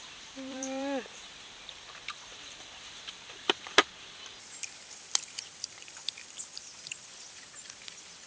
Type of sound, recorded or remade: remade